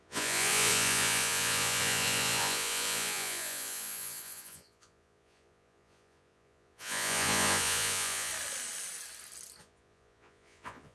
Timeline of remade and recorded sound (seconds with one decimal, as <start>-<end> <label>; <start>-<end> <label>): 0.0-8.3 remade; 8.3-9.6 recorded; 9.6-10.9 remade